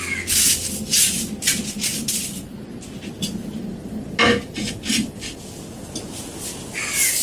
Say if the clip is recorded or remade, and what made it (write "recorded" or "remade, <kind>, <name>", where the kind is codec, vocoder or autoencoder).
recorded